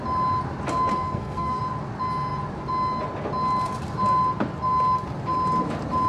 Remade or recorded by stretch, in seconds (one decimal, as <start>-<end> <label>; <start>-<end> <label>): 0.0-0.9 recorded; 0.9-1.6 remade; 1.6-6.1 recorded